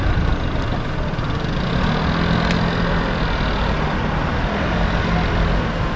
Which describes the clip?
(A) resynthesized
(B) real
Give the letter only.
B